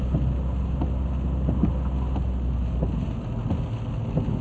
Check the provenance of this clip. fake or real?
real